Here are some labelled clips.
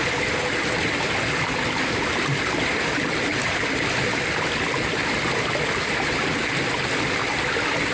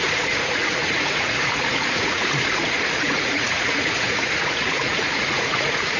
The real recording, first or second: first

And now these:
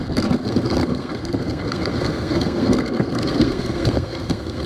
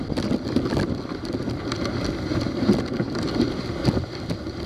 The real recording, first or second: second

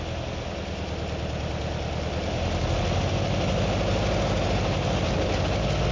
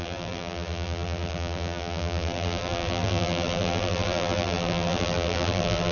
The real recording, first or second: first